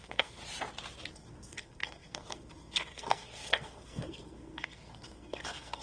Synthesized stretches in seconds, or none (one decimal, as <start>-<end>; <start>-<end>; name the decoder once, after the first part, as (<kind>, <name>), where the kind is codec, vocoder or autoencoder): 0.0-0.4 (codec, SNAC); 1.1-5.8